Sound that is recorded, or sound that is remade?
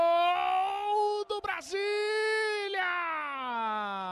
recorded